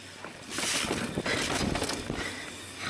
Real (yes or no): yes